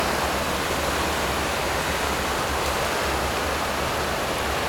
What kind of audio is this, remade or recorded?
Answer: recorded